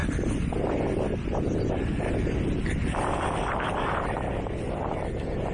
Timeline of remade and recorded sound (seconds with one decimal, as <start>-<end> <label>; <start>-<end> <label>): 0.0-5.5 recorded

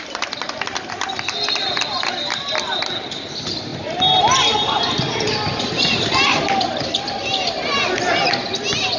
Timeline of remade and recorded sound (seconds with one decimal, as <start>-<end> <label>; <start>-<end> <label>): 0.0-9.0 recorded

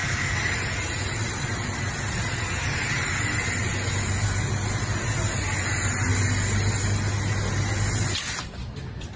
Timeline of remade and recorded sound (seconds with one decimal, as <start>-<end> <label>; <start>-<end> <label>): 0.0-9.2 recorded